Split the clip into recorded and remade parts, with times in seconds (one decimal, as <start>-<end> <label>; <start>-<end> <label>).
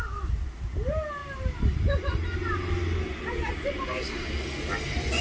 0.0-5.2 recorded